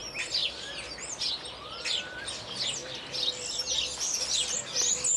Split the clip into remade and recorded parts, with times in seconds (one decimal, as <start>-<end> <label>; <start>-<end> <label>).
0.0-5.2 recorded